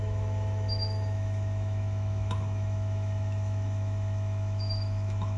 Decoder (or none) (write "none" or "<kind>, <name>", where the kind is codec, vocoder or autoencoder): autoencoder, DAC-VAE